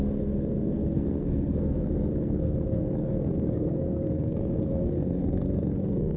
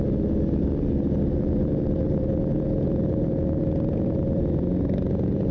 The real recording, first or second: second